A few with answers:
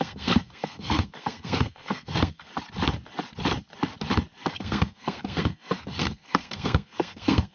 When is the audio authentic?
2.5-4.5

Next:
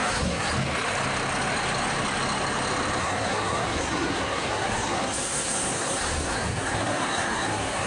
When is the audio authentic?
0.5-3.0